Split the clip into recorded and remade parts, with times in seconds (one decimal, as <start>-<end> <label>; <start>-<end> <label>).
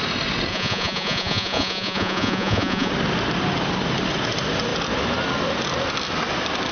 0.0-0.5 recorded; 0.5-2.9 remade; 2.9-6.7 recorded